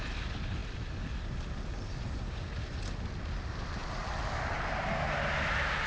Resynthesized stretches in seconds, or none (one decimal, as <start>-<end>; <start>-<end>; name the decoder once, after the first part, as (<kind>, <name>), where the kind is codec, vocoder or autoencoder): none